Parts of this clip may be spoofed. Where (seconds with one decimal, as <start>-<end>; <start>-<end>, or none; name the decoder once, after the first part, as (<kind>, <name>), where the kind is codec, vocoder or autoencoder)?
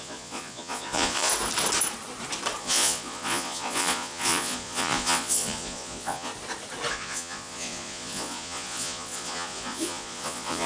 0.0-1.3 (vocoder, Vocos); 2.6-6.3; 6.9-10.7